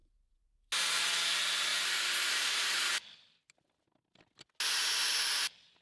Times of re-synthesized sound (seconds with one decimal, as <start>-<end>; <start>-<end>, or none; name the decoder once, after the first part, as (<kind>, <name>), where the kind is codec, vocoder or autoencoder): none